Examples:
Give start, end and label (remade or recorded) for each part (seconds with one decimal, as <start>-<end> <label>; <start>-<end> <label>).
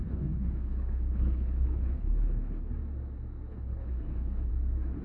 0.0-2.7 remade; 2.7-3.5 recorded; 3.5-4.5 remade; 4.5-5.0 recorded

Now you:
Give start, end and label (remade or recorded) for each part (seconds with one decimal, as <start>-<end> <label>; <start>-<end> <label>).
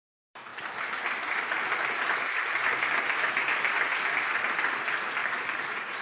0.0-0.5 remade; 0.5-4.1 recorded; 4.1-5.2 remade; 5.2-6.0 recorded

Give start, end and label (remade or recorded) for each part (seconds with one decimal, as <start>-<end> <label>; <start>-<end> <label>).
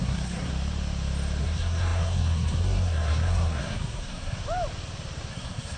0.0-0.5 remade; 0.5-1.4 recorded; 1.4-4.4 remade; 4.4-5.3 recorded; 5.3-5.8 remade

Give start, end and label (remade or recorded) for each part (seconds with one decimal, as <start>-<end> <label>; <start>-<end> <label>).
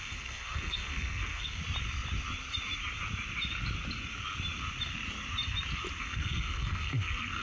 0.0-1.6 remade; 1.6-6.0 recorded; 6.0-7.4 remade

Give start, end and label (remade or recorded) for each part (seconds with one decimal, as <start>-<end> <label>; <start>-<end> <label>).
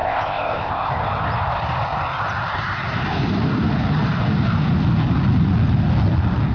0.0-0.9 remade; 0.9-6.5 recorded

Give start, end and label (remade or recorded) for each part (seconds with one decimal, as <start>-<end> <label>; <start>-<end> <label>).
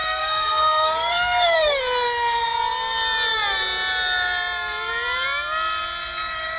0.0-1.8 remade; 1.8-6.6 recorded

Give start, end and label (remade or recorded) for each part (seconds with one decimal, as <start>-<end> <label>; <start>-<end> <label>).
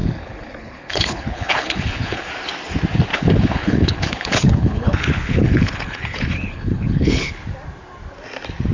0.0-2.3 remade; 2.3-3.1 recorded; 3.1-7.3 remade; 7.3-8.7 recorded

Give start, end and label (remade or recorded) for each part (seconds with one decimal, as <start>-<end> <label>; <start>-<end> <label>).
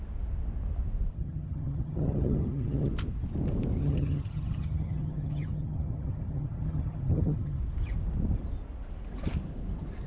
0.0-1.1 recorded; 1.1-2.9 remade; 2.9-3.8 recorded; 3.8-7.6 remade; 7.6-10.1 recorded